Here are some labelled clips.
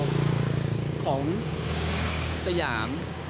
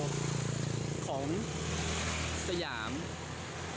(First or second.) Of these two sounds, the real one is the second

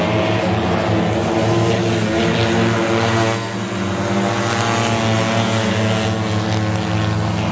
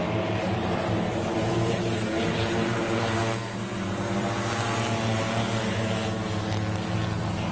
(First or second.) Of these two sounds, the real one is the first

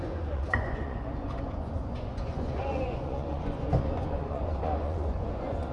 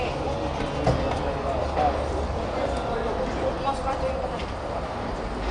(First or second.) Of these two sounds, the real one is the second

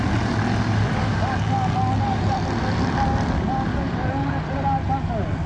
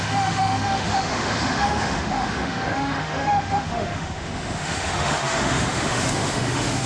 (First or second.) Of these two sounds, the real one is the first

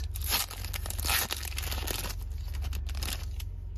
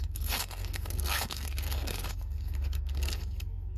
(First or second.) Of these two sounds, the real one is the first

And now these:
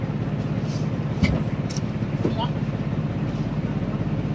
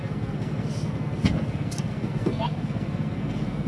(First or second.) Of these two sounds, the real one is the first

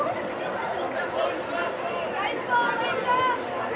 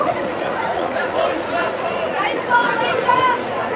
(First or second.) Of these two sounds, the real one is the first